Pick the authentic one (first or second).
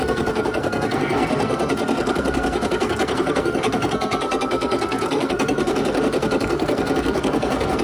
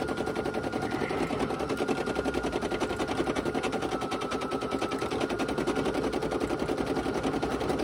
second